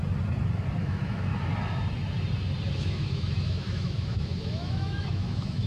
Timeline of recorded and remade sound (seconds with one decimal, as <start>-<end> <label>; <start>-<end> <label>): 0.0-0.8 recorded; 0.8-1.3 remade; 1.3-2.8 recorded; 2.8-5.7 remade